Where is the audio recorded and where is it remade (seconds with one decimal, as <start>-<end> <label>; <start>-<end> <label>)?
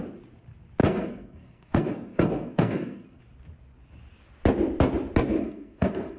0.0-0.8 recorded; 0.8-3.2 remade; 3.2-5.4 recorded; 5.4-6.2 remade